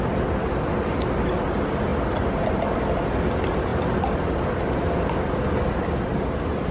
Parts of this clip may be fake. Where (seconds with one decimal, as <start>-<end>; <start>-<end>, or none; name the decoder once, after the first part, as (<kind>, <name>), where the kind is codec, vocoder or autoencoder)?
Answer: none